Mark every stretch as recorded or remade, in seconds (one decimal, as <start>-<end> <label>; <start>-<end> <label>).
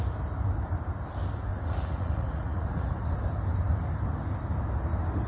0.0-1.5 recorded; 1.5-2.9 remade; 2.9-5.3 recorded